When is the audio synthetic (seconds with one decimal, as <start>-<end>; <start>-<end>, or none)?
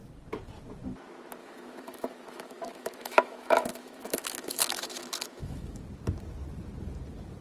1.4-5.8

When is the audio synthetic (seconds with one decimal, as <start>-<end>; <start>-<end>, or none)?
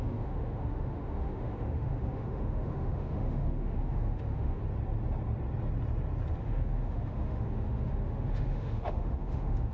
0.0-4.6; 6.4-9.7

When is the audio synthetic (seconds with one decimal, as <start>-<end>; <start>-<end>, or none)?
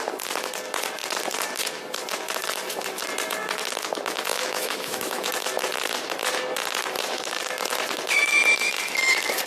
4.3-5.3